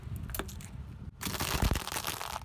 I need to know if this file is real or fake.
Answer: real